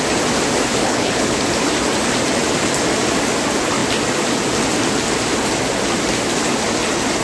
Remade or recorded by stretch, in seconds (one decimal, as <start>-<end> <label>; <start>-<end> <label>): 0.0-0.8 recorded; 0.8-1.4 remade; 1.4-7.2 recorded